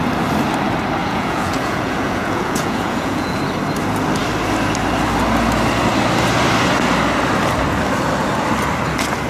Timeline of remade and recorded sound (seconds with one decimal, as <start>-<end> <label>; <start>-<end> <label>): 0.0-1.0 recorded; 1.0-3.4 remade; 3.4-9.3 recorded